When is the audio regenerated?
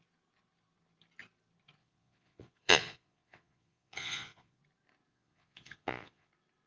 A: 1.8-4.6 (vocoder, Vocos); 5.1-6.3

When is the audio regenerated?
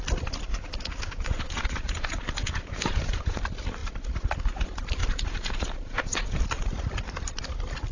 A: 0.5-3.4 (vocoder, Vocos); 5.0-6.4